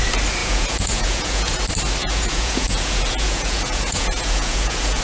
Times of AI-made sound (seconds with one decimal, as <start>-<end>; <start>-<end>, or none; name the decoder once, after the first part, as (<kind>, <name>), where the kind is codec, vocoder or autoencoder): 0.4-1.6 (vocoder, Vocos); 2.0-5.0